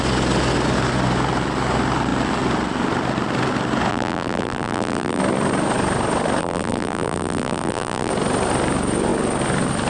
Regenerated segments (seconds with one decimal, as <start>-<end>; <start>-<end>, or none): 3.9-5.2; 6.4-8.1